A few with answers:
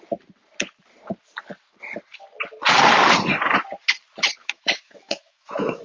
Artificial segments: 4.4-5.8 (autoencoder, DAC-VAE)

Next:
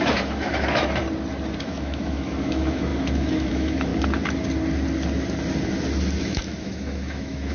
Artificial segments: 0.0-1.0 (autoencoder, DAC-VAE); 1.6-3.9; 6.2-7.5

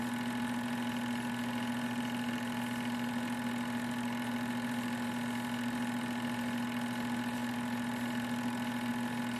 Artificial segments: none

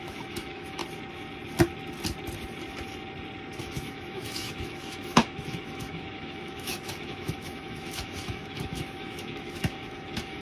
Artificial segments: 0.0-0.8 (autoencoder, DAC-VAE); 3.6-10.4

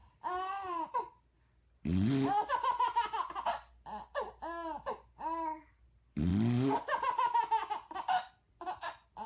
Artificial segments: none

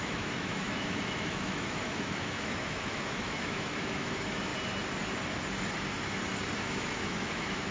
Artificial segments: 0.0-4.5 (autoencoder, DAC-VAE); 6.6-7.7

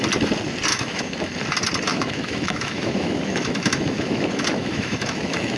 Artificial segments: 0.7-1.3 (autoencoder, DAC-VAE); 1.9-5.6